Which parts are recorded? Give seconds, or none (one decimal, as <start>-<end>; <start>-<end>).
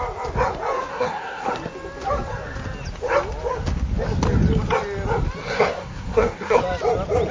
0.0-0.9; 1.5-5.4; 6.6-7.3